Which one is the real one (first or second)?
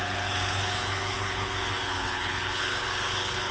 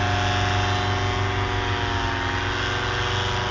second